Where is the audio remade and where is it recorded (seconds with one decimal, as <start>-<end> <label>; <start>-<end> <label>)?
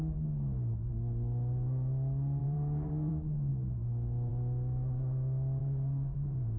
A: 0.0-2.4 recorded; 2.4-3.1 remade; 3.1-5.6 recorded; 5.6-6.6 remade